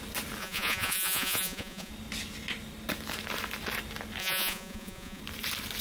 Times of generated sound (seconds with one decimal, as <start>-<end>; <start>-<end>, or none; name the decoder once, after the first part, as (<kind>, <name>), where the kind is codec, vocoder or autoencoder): 0.4-1.9 (vocoder, Vocos); 4.2-5.2